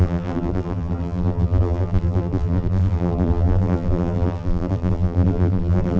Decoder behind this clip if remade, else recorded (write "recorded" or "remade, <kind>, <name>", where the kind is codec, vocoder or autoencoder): remade, vocoder, BigVGAN v2